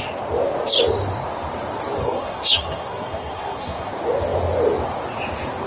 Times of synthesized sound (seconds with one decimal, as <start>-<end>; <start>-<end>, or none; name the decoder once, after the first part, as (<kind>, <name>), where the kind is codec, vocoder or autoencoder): 2.0-3.9 (codec, SNAC)